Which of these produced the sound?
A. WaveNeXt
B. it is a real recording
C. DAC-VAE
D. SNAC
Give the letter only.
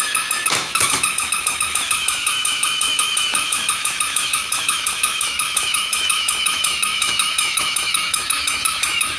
C